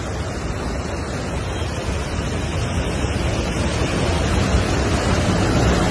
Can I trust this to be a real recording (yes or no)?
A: yes